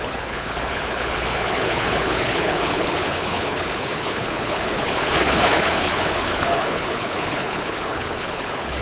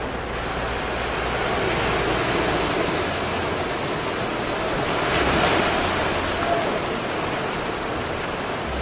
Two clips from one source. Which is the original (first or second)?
second